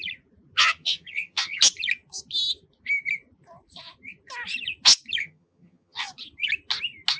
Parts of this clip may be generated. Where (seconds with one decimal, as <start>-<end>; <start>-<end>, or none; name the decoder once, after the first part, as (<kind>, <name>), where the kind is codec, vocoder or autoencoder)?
0.6-1.6 (vocoder, HiFi-GAN); 5.2-6.1